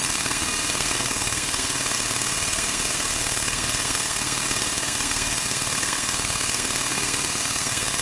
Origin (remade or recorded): remade